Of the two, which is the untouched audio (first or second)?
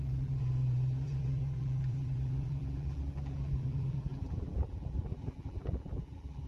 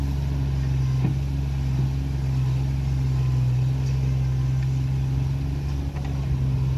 second